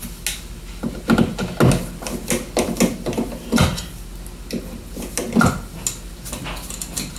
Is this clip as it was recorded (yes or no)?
yes